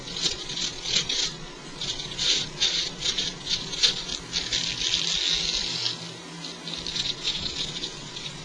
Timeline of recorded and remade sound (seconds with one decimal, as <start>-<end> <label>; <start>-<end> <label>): 0.0-4.1 remade; 4.1-6.9 recorded; 6.9-8.4 remade